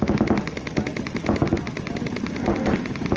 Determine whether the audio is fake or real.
real